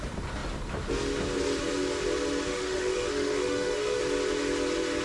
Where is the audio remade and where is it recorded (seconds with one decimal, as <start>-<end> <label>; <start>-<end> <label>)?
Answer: 0.0-2.5 recorded; 2.5-4.0 remade; 4.0-5.0 recorded

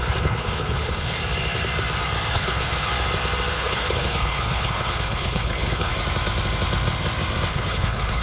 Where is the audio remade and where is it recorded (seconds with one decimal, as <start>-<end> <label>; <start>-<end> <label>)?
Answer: 0.0-1.2 remade; 1.2-2.3 recorded; 2.3-2.9 remade; 2.9-3.5 recorded; 3.5-5.9 remade; 5.9-7.5 recorded; 7.5-8.2 remade

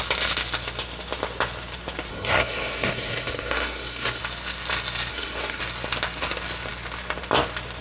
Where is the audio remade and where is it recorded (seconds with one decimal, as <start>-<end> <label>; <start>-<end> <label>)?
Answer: 0.0-2.1 recorded; 2.1-4.2 remade; 4.2-5.1 recorded; 5.1-5.6 remade; 5.6-7.8 recorded

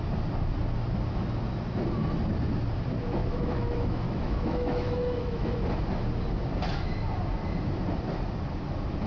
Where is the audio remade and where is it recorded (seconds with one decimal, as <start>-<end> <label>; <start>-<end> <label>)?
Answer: 0.0-3.2 recorded; 3.2-5.5 remade; 5.5-9.1 recorded

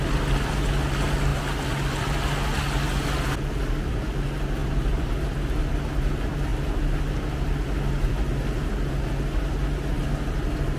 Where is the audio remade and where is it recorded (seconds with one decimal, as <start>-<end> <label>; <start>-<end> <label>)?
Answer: 0.0-4.6 recorded; 4.6-6.0 remade; 6.0-10.8 recorded